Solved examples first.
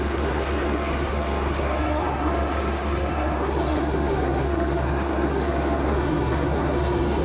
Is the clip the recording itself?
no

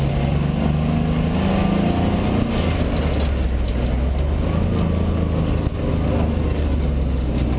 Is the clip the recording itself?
yes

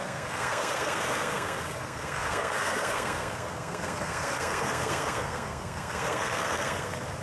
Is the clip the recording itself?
no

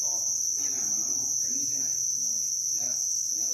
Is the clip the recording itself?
yes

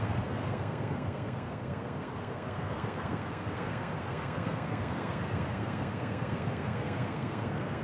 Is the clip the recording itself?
no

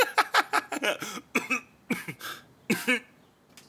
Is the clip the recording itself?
yes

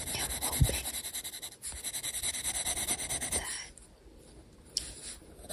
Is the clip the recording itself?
yes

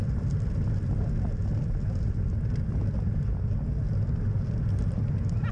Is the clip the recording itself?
yes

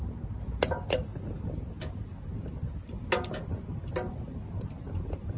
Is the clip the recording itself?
yes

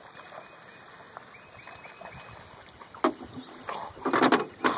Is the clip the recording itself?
yes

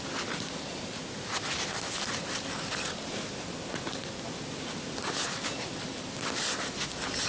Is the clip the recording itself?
yes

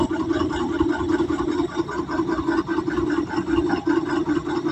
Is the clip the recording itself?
yes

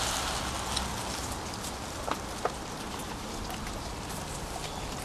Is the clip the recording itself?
yes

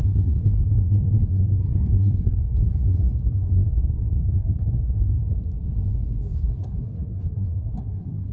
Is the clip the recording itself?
no